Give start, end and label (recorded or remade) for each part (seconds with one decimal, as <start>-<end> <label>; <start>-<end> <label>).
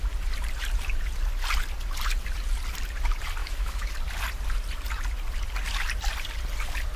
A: 0.0-3.4 recorded; 3.4-3.9 remade; 3.9-7.0 recorded